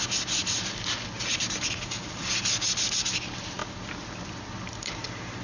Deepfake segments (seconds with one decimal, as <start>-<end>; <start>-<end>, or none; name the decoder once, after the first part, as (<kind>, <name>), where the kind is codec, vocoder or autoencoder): none